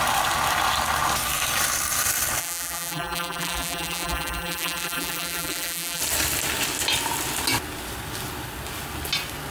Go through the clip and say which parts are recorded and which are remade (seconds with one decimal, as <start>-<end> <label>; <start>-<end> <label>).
0.0-2.4 recorded; 2.4-6.0 remade; 6.0-9.5 recorded